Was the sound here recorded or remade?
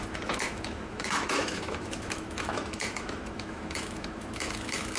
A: remade